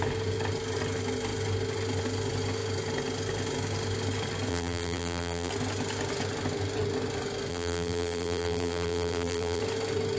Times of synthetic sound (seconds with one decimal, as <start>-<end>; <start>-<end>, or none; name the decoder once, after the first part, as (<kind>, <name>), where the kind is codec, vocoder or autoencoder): 4.5-5.5 (vocoder, BigVGAN v2); 7.5-9.6